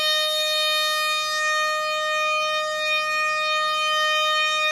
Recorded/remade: recorded